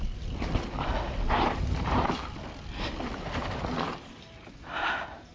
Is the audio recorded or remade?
recorded